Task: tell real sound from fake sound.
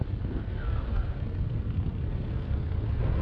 fake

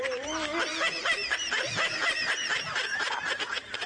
fake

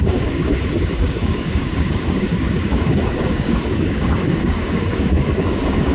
fake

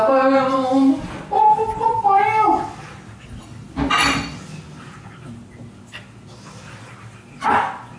real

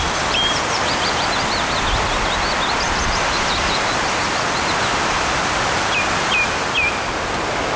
real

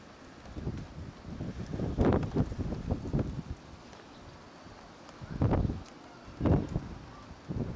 real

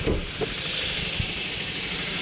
real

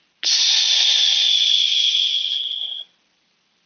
real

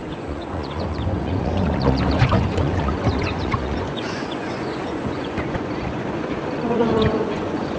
fake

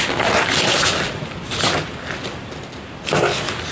real